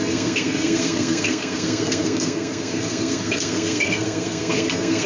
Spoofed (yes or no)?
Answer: yes